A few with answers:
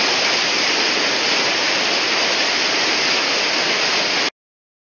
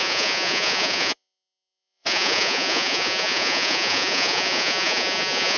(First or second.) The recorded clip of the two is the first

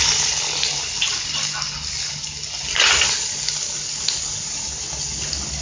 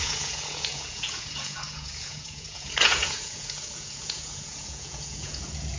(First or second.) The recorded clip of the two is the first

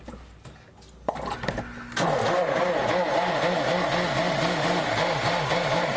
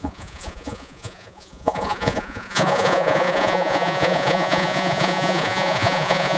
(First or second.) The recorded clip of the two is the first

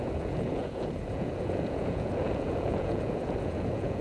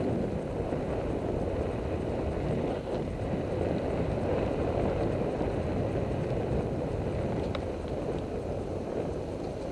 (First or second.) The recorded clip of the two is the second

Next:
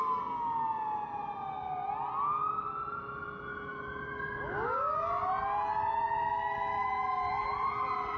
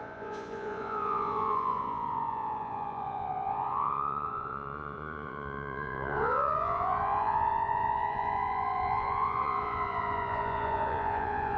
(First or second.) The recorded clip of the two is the first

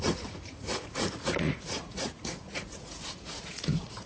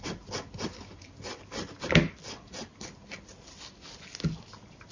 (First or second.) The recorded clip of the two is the second